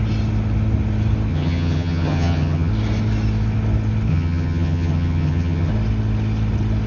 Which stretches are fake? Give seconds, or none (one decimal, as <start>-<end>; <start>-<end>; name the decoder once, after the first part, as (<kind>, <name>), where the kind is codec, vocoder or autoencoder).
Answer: 1.3-2.7 (vocoder, HiFi-GAN); 4.1-5.7